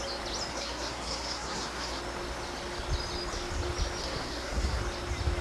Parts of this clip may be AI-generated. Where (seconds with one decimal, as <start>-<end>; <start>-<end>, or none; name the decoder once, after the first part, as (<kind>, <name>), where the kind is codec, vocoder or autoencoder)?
0.5-2.0 (codec, SNAC); 4.0-4.8